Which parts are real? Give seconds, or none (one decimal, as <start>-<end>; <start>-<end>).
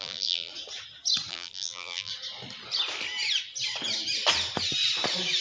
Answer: 0.5-1.3; 2.1-5.4